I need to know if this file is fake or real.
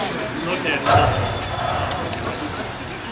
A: real